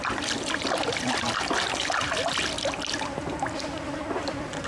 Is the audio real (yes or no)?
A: yes